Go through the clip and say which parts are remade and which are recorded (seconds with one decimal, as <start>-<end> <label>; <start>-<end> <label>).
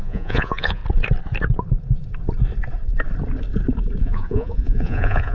0.0-0.8 remade; 0.8-4.0 recorded; 4.0-5.3 remade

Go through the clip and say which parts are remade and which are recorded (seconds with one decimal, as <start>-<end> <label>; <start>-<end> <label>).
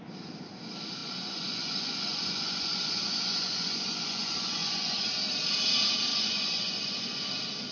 0.0-1.0 recorded; 1.0-5.1 remade; 5.1-6.1 recorded; 6.1-7.3 remade; 7.3-7.7 recorded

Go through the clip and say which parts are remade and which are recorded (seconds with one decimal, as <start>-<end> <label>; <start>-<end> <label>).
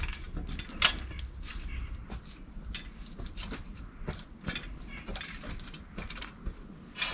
0.0-7.1 recorded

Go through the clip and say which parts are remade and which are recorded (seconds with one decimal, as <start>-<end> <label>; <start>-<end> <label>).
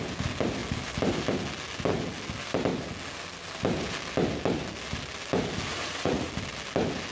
0.0-5.7 recorded; 5.7-6.3 remade; 6.3-7.1 recorded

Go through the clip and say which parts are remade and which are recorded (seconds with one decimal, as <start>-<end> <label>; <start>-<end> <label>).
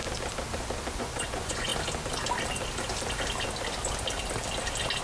0.0-0.9 recorded; 0.9-1.7 remade; 1.7-5.0 recorded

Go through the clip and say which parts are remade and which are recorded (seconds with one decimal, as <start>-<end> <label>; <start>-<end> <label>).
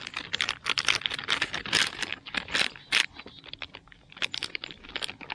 0.0-5.3 recorded